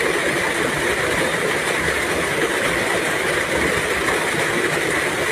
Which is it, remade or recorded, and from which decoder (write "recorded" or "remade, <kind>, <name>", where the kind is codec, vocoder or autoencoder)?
recorded